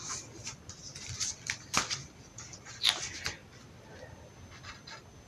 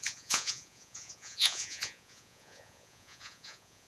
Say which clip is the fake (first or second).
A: second